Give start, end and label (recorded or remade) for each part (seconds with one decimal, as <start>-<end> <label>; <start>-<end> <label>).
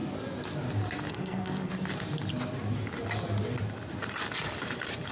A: 0.0-1.1 recorded; 1.1-1.7 remade; 1.7-5.1 recorded